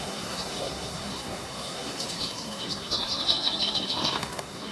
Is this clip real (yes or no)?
no